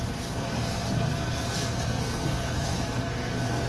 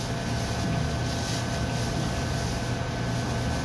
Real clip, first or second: second